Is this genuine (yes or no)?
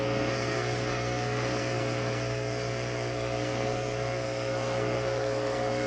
no